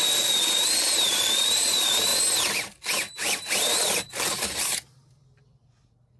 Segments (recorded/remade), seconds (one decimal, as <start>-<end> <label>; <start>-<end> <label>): 0.0-2.1 remade; 2.1-4.1 recorded; 4.1-6.2 remade